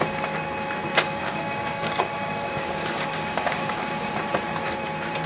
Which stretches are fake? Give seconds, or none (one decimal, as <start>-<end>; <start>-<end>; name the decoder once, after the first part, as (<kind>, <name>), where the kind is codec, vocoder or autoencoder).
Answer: 0.9-4.1 (codec, DAC)